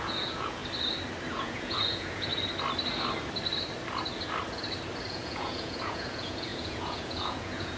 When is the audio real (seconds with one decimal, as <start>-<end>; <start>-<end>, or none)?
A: 0.6-1.3; 2.3-5.1